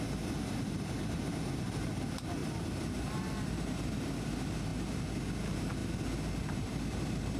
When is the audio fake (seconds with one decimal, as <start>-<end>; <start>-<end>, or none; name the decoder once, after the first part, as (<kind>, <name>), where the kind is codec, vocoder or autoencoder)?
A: 0.0-4.7 (vocoder, BigVGAN v2); 5.3-5.8; 6.4-7.4